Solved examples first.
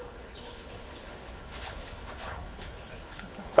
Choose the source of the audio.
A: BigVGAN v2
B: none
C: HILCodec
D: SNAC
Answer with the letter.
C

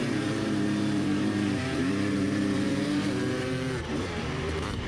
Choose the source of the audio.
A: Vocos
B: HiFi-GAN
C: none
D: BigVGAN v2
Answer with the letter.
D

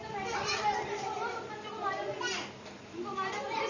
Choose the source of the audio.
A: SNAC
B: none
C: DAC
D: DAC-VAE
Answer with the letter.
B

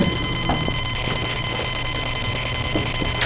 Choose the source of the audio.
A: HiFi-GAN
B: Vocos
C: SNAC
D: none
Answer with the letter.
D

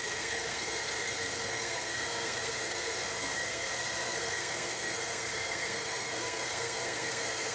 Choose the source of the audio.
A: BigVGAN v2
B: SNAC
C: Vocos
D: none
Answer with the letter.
B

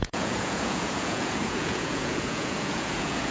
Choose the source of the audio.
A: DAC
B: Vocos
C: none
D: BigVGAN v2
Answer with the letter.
B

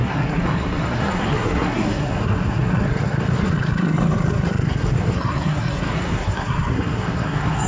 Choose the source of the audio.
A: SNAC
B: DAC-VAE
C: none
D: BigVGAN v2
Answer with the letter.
A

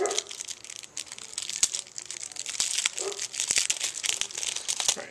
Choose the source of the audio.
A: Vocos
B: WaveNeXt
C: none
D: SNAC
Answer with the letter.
C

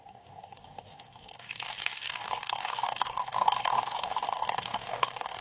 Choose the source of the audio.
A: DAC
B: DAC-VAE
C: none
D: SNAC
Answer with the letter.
A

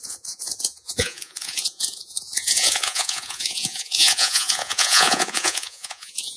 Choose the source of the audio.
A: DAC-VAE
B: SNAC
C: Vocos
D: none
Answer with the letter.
C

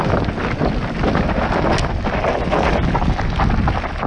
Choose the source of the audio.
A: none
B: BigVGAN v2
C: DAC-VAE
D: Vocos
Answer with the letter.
A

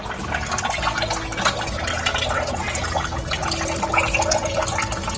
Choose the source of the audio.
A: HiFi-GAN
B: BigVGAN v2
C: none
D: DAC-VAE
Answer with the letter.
C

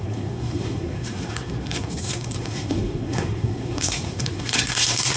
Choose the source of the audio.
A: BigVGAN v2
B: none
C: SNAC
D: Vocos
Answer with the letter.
C